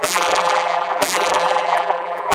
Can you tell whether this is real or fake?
fake